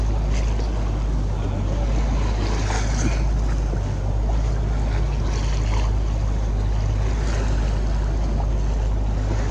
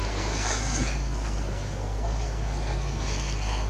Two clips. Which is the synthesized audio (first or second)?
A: second